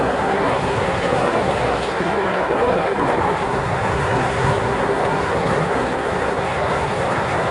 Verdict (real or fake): fake